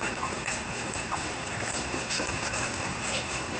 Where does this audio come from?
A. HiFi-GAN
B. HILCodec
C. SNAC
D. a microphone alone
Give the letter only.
C